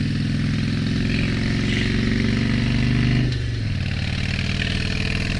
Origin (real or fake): real